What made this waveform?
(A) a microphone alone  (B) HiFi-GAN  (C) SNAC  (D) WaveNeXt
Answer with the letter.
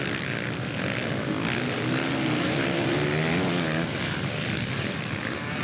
A